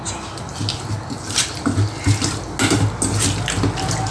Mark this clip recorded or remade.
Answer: recorded